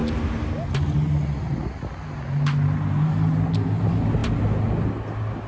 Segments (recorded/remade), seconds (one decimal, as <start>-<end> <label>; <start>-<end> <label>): 0.0-5.5 recorded